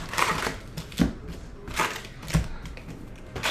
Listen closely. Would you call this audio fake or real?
real